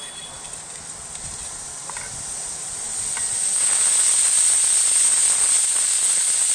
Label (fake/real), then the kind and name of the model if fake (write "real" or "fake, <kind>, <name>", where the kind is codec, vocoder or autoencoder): real